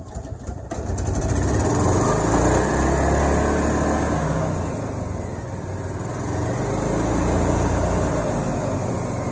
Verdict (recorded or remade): recorded